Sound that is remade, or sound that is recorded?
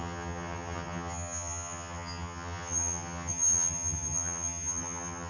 remade